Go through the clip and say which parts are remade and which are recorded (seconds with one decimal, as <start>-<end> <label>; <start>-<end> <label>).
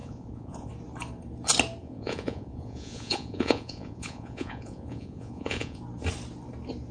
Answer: 0.0-0.7 remade; 0.7-1.8 recorded; 1.8-5.8 remade; 5.8-6.9 recorded